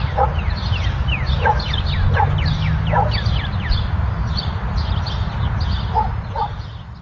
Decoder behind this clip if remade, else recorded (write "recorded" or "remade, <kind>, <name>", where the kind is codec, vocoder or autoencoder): recorded